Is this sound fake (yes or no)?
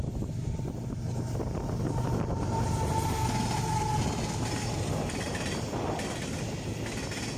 no